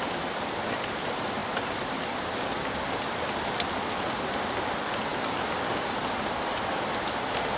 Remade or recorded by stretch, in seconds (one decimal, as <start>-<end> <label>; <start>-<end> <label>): 0.0-7.6 recorded